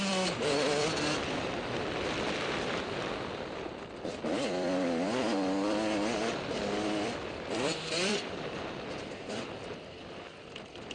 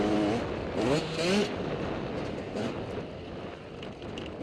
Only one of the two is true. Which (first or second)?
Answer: second